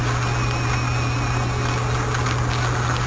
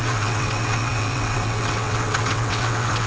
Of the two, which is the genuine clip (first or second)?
first